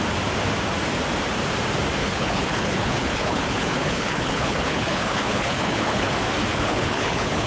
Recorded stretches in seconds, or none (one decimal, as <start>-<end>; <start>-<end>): 0.0-2.0; 6.1-6.5

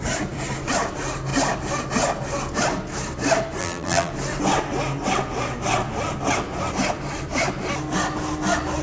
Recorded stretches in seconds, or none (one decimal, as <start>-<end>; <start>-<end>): 0.0-3.6; 4.1-8.8

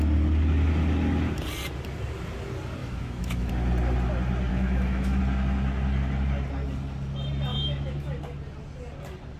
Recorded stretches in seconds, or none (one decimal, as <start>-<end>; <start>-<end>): 0.0-2.8; 3.5-4.5; 5.2-7.5; 8.2-9.4

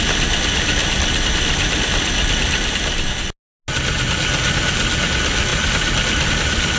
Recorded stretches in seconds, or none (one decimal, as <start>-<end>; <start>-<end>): 0.0-0.8; 3.1-5.5; 6.3-6.8